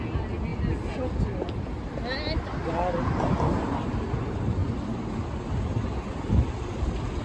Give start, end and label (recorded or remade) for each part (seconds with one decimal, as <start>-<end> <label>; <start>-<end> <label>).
0.0-4.6 recorded; 4.6-6.1 remade; 6.1-7.2 recorded